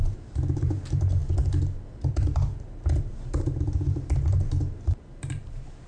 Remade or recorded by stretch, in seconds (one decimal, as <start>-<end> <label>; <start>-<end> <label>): 0.0-1.2 remade; 1.2-2.1 recorded; 2.1-5.9 remade